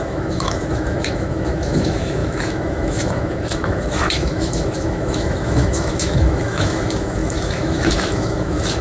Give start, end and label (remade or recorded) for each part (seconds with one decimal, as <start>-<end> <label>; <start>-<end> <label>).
0.0-8.8 remade

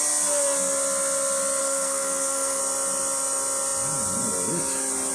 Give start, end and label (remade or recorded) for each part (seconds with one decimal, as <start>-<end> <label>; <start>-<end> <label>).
0.0-1.6 recorded; 1.6-2.6 remade; 2.6-5.1 recorded

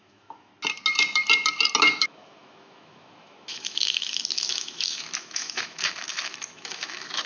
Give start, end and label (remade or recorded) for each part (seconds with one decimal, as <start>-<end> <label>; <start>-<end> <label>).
0.0-0.5 remade; 0.5-1.8 recorded; 1.8-7.3 remade

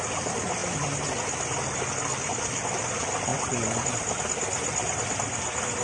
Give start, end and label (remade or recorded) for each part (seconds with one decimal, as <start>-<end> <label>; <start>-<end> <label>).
0.0-5.8 recorded

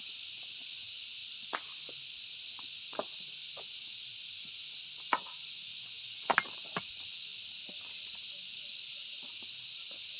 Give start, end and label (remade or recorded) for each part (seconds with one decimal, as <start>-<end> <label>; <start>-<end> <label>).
0.0-1.2 recorded; 1.2-2.5 remade; 2.5-7.3 recorded; 7.3-9.0 remade; 9.0-10.2 recorded

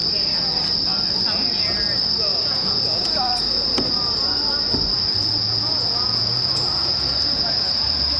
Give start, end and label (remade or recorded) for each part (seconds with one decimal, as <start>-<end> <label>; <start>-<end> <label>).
0.0-2.3 recorded; 2.3-3.4 remade; 3.4-5.1 recorded; 5.1-8.2 remade

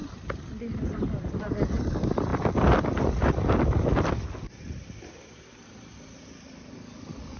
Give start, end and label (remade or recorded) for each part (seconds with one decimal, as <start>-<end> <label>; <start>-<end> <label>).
0.0-1.1 remade; 1.1-2.3 recorded; 2.3-6.7 remade; 6.7-7.4 recorded

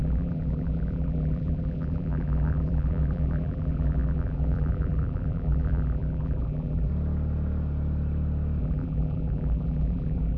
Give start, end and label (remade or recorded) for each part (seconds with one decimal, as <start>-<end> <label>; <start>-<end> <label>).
0.0-6.9 remade; 6.9-8.6 recorded; 8.6-10.4 remade